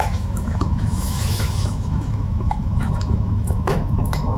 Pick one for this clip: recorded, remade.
remade